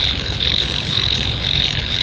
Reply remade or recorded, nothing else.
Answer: remade